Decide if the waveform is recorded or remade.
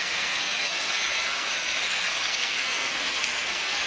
remade